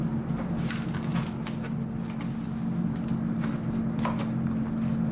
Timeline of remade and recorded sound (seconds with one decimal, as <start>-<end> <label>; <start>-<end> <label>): 0.0-5.1 recorded